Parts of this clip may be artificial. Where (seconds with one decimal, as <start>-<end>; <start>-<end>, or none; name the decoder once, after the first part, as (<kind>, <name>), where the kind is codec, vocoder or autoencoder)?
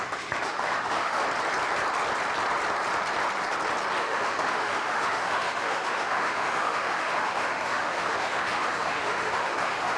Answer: 0.0-1.2 (autoencoder, DAC-VAE); 4.0-10.0